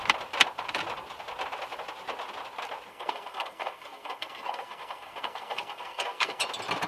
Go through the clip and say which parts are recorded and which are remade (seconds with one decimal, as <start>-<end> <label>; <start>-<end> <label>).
0.0-2.9 recorded; 2.9-6.4 remade; 6.4-6.9 recorded